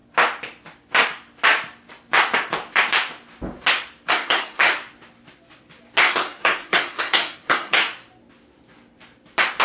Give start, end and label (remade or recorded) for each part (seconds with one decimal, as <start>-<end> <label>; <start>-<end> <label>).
0.0-4.1 recorded; 4.1-4.7 remade; 4.7-6.0 recorded; 6.0-7.8 remade; 7.8-9.6 recorded